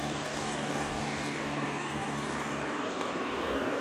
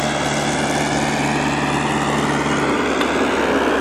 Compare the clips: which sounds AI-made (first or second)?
first